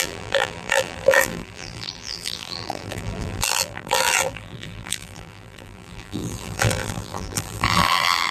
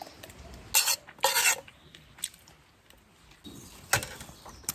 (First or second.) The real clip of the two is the second